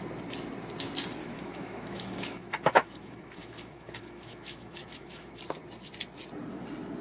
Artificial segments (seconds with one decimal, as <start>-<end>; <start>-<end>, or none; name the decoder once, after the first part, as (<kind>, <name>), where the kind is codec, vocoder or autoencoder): 1.2-5.4 (autoencoder, DAC-VAE)